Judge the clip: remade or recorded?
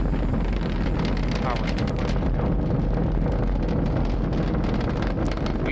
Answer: recorded